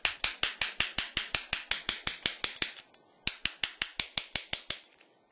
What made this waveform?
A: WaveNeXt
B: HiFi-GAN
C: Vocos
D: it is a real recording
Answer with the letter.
D